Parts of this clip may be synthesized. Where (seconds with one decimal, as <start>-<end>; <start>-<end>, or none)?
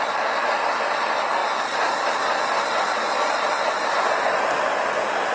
none